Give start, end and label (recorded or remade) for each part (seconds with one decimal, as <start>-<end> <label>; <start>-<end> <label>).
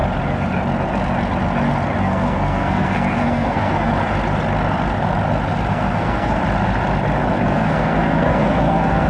0.0-2.0 recorded; 2.0-3.9 remade; 3.9-5.7 recorded; 5.7-6.4 remade; 6.4-7.3 recorded; 7.3-9.1 remade